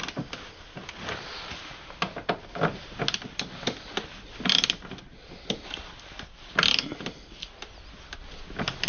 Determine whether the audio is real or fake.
real